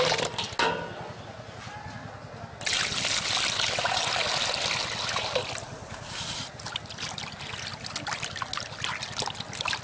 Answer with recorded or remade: recorded